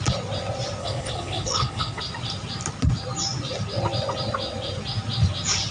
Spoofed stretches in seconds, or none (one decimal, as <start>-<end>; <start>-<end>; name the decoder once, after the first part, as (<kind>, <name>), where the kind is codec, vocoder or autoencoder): 0.8-2.0 (codec, HILCodec)